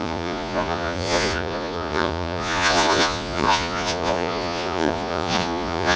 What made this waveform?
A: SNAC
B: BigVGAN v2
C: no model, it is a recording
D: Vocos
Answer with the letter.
D